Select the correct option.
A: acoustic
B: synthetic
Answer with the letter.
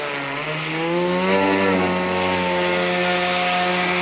A